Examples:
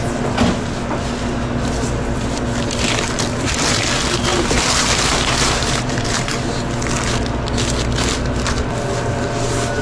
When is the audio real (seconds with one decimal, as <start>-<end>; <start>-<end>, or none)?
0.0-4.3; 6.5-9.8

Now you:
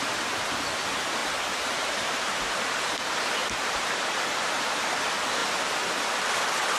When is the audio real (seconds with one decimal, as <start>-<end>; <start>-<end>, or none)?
0.0-1.2; 2.8-3.4; 4.5-6.8

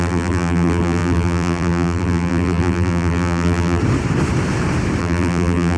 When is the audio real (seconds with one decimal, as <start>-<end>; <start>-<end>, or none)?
3.8-5.0